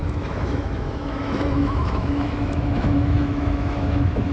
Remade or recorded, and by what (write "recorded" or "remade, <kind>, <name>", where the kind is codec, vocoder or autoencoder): remade, autoencoder, DAC-VAE